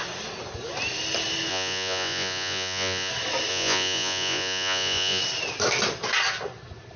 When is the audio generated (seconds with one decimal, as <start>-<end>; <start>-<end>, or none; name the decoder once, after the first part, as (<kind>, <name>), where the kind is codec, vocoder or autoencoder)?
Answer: 1.5-3.1 (vocoder, Vocos); 3.5-5.2